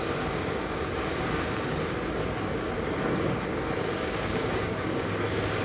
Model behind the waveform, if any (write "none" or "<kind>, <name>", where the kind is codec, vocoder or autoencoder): codec, DAC